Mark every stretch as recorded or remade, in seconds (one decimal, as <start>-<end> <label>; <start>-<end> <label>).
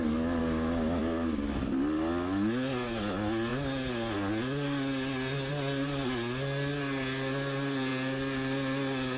0.0-0.4 recorded; 0.4-1.0 remade; 1.0-9.2 recorded